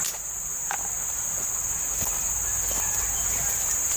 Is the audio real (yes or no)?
yes